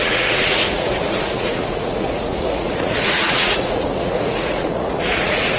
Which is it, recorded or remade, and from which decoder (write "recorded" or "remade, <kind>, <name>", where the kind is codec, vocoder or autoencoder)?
remade, vocoder, Vocos